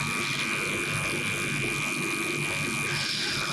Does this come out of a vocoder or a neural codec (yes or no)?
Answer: no